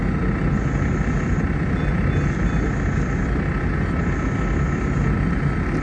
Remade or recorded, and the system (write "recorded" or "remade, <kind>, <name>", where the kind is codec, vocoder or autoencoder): recorded